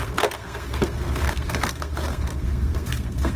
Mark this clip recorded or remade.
remade